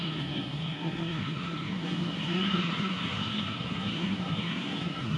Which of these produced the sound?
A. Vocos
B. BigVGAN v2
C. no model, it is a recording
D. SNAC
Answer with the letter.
D